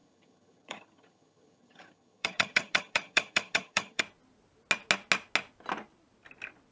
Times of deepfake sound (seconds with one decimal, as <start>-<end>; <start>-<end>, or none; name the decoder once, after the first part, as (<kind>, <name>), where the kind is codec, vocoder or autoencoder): 0.0-4.0 (vocoder, HiFi-GAN)